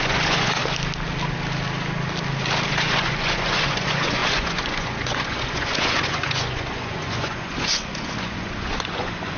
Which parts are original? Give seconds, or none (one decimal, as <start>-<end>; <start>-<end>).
0.6-2.7